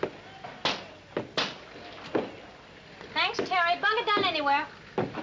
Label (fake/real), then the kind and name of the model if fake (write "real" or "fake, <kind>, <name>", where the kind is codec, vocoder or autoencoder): real